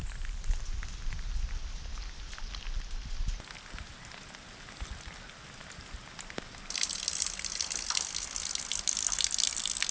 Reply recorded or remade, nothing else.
recorded